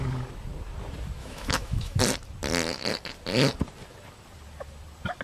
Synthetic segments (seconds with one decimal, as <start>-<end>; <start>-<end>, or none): 1.2-2.0